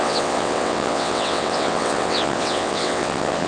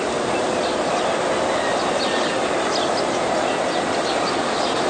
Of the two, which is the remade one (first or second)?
first